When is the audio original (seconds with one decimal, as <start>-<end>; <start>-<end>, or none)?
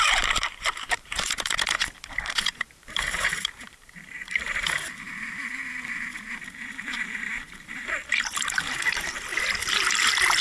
9.3-10.4